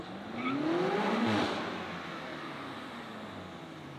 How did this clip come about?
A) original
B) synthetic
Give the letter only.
A